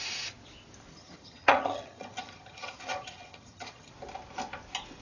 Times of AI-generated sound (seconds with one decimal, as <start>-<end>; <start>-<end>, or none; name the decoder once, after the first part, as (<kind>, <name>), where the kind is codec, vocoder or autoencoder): 0.9-3.9 (vocoder, HiFi-GAN)